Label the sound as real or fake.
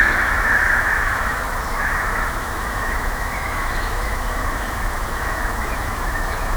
fake